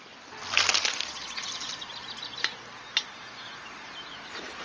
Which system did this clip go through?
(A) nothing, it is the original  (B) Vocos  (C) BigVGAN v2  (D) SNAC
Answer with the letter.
A